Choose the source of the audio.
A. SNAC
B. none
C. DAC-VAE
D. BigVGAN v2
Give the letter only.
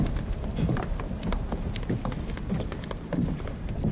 B